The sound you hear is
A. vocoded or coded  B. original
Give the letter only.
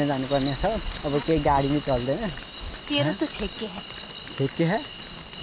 B